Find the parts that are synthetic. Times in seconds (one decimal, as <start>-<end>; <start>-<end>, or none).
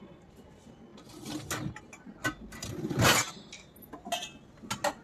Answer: none